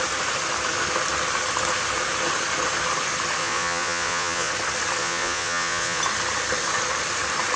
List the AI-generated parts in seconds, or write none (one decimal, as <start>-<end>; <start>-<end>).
3.4-4.5; 5.0-6.0